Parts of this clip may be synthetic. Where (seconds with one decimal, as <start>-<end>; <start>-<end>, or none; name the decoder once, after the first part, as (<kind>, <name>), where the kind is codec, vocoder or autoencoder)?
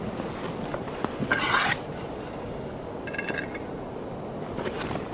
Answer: none